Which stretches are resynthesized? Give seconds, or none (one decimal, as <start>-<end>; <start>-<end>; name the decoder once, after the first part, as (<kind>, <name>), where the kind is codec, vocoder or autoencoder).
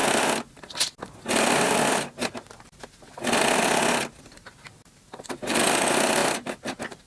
0.0-0.6 (vocoder, BigVGAN v2); 4.8-5.6; 6.2-7.1